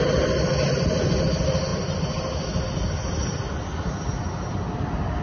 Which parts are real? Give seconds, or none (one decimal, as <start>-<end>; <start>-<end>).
0.0-5.2